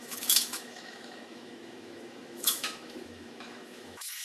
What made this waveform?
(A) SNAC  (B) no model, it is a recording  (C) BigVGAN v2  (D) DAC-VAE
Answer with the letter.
D